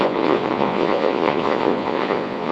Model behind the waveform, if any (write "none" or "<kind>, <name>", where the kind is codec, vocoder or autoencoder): vocoder, Vocos